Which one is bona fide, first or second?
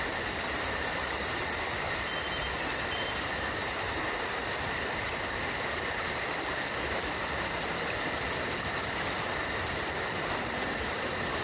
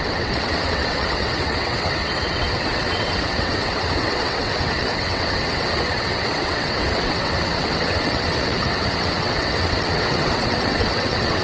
first